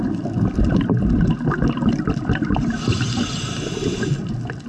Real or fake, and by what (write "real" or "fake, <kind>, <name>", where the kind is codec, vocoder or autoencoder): real